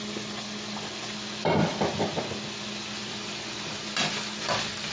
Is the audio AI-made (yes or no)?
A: no